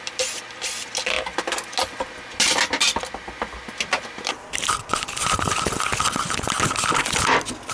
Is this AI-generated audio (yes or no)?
no